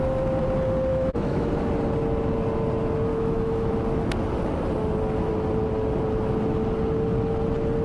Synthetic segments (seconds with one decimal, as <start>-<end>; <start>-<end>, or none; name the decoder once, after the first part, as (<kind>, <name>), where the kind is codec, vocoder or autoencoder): 0.9-1.5 (autoencoder, DAC-VAE); 3.1-3.7